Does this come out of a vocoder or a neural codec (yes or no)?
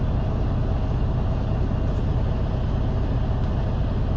no